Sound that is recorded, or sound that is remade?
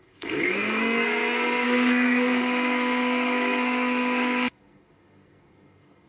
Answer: remade